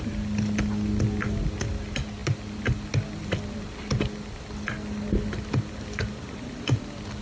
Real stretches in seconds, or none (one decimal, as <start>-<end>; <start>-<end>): 0.0-7.2